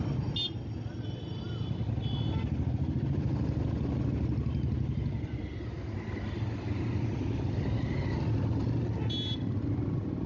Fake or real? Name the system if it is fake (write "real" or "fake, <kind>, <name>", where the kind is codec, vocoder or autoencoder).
real